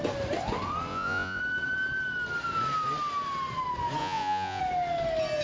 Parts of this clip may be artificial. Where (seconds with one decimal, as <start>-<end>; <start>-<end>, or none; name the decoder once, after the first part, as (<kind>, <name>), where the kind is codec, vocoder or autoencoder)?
0.9-1.4 (vocoder, Vocos); 4.0-4.6